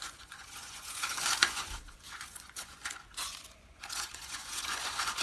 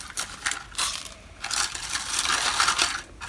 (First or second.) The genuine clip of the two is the second